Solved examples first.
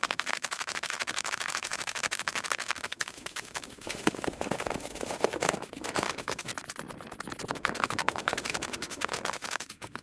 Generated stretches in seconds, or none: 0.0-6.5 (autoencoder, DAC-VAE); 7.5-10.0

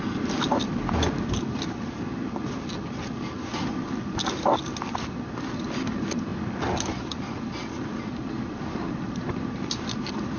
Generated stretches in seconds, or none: none

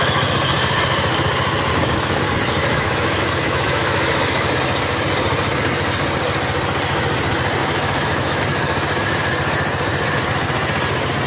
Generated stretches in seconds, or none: 1.7-2.2 (autoencoder, DAC-VAE); 2.6-4.5; 7.6-8.4

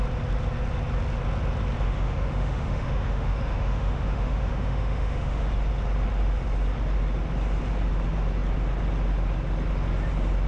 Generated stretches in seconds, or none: 1.9-5.5 (autoencoder, DAC-VAE)

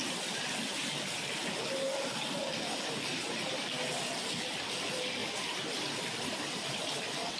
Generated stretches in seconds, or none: none

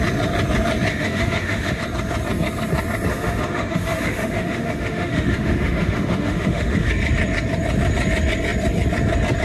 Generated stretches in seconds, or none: 0.9-1.8 (autoencoder, DAC-VAE); 3.1-6.9

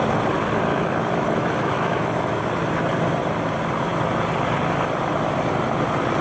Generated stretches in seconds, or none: 0.7-2.4 (autoencoder, DAC-VAE)

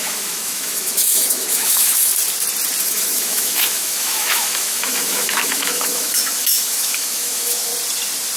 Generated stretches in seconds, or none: 0.0-2.1 (autoencoder, DAC-VAE); 2.8-7.7